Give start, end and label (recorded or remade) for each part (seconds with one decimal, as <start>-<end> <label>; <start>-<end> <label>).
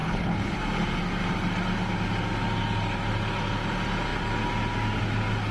0.0-0.6 remade; 0.6-5.5 recorded